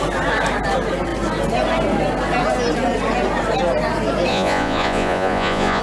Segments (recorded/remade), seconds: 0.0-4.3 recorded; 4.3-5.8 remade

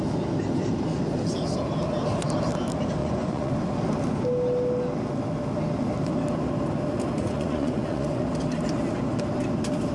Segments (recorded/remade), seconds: 0.0-3.0 recorded; 3.0-3.5 remade; 3.5-7.2 recorded; 7.2-8.2 remade; 8.2-9.9 recorded

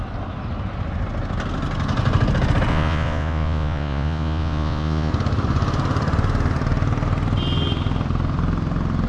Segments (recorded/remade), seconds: 0.0-2.7 recorded; 2.7-5.1 remade; 5.1-9.1 recorded

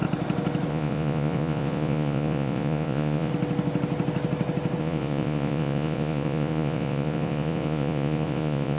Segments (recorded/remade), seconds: 0.0-0.7 recorded; 0.7-3.3 remade; 3.3-4.8 recorded; 4.8-8.8 remade

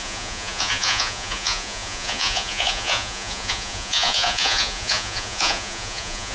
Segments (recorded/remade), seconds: 0.0-6.3 remade

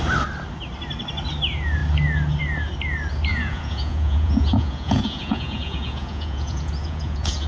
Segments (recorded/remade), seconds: 0.0-3.3 recorded; 3.3-7.5 remade

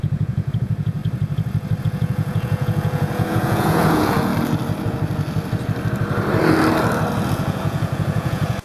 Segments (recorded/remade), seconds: 0.0-1.0 remade; 1.0-1.8 recorded; 1.8-4.3 remade; 4.3-7.3 recorded; 7.3-8.6 remade